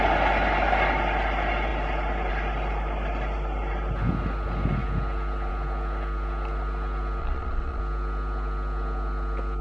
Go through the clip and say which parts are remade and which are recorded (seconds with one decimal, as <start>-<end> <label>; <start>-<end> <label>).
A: 0.0-7.2 recorded; 7.2-7.8 remade; 7.8-9.6 recorded